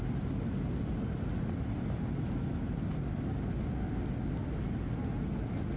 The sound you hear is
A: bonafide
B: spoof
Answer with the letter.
A